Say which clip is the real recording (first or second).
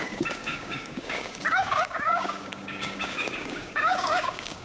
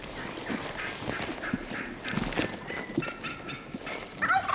second